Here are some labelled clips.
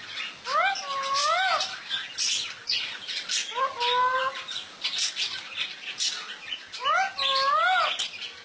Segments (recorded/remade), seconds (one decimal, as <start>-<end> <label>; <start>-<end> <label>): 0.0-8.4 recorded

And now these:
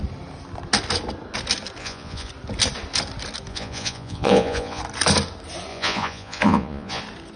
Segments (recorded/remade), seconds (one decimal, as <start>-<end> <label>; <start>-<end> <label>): 0.0-1.8 recorded; 1.8-2.3 remade; 2.3-3.5 recorded; 3.5-4.8 remade; 4.8-5.7 recorded; 5.7-7.0 remade; 7.0-7.4 recorded

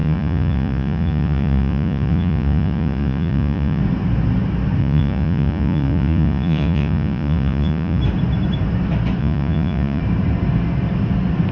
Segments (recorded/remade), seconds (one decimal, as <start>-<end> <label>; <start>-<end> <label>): 0.0-3.8 remade; 3.8-4.8 recorded; 4.8-8.0 remade; 8.0-9.2 recorded; 9.2-10.0 remade; 10.0-11.5 recorded